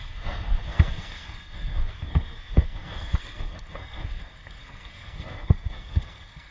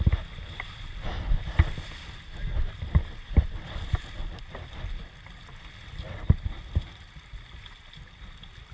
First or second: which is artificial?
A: first